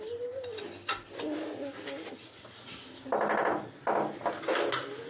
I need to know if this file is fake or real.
real